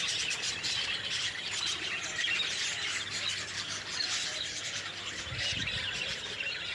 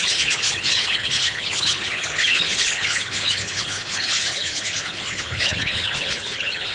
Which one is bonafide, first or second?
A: first